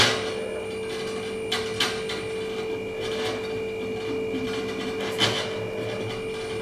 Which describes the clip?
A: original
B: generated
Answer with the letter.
A